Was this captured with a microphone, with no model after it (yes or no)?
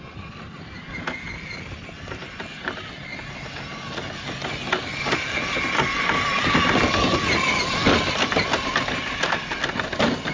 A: yes